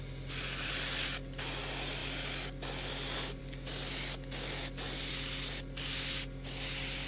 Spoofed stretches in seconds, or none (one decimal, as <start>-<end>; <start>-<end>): none